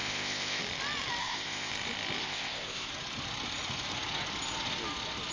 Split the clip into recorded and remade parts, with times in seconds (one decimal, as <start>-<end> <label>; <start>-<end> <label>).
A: 0.0-0.6 remade; 0.6-1.2 recorded; 1.2-1.7 remade; 1.7-2.2 recorded; 2.2-2.9 remade; 2.9-5.3 recorded